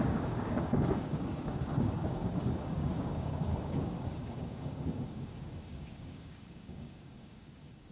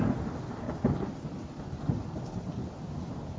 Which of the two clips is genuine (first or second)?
second